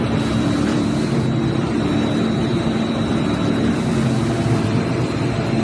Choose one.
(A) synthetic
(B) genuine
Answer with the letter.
A